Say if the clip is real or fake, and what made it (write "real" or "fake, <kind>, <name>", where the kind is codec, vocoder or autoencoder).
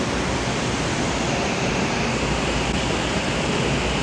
real